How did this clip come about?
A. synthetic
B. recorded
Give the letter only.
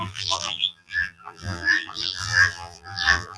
A